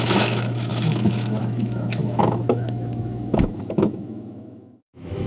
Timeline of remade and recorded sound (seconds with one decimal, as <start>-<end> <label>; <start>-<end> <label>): 0.0-5.3 remade